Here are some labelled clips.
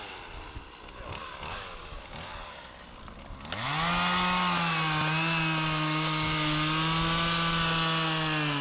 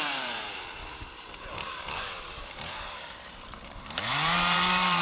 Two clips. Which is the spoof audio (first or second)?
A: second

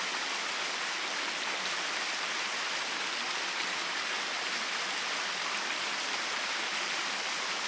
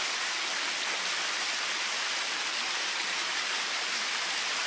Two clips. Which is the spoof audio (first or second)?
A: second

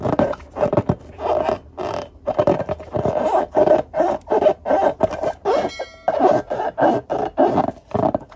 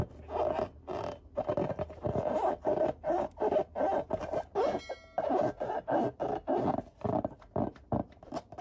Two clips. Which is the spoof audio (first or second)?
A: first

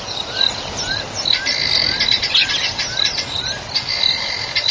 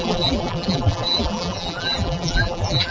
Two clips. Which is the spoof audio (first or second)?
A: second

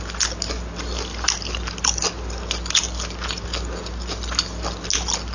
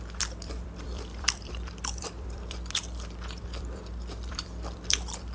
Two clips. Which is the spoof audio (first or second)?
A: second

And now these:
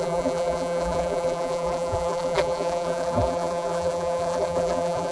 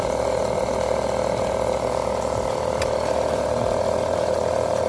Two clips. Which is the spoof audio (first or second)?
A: first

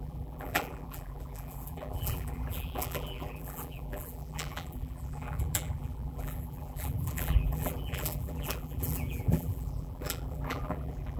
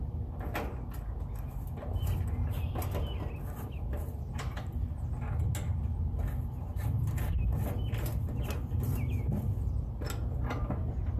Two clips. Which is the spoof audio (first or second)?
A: first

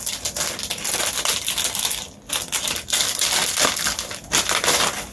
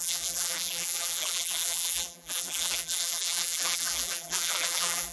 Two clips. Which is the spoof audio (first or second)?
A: second